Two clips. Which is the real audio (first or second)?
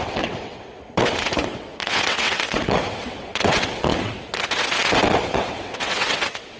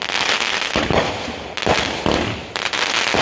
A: second